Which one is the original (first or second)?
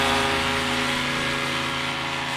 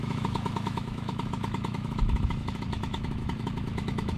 first